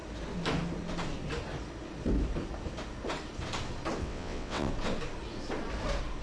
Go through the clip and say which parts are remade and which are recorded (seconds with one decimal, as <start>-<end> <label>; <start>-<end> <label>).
0.0-4.0 recorded; 4.0-4.7 remade; 4.7-6.2 recorded